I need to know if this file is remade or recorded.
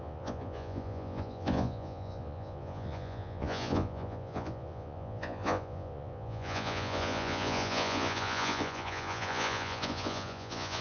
remade